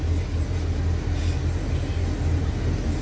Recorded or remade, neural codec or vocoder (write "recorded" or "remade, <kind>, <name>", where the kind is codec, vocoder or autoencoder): recorded